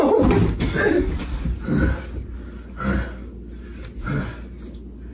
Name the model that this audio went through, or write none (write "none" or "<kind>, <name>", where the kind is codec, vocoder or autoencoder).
none